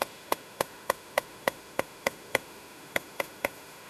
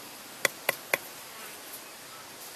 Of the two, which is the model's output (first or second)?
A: first